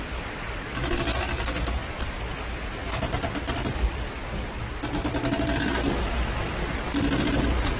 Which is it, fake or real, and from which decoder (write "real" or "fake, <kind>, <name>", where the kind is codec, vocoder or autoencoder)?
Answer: real